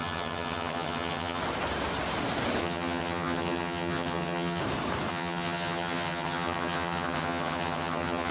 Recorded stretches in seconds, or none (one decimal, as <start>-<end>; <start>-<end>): 1.4-2.6; 4.6-5.1